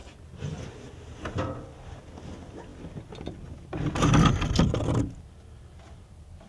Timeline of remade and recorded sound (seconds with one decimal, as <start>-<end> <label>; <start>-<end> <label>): 0.0-6.5 recorded